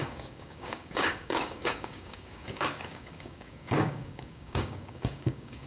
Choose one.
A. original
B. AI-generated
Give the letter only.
B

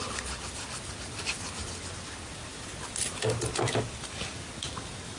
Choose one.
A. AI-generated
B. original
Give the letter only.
B